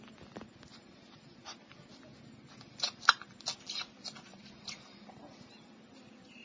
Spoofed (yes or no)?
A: no